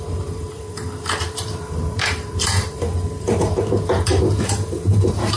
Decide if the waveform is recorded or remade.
remade